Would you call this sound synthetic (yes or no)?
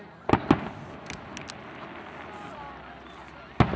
no